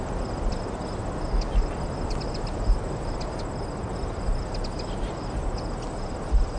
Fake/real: real